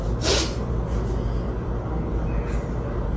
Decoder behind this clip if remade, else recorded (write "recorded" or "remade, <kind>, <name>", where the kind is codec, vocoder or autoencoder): recorded